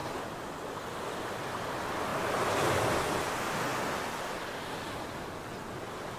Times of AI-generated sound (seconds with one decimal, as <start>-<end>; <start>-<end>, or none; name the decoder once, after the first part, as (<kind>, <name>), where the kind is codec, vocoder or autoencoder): none